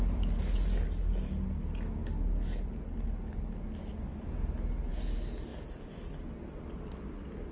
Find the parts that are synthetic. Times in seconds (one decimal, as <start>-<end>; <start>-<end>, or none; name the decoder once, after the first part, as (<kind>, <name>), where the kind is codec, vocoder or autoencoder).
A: none